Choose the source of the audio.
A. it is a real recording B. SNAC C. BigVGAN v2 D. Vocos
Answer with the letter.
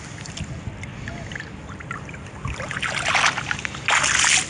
A